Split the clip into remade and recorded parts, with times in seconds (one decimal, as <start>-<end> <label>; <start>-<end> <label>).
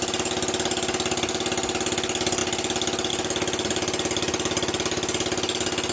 0.0-5.9 recorded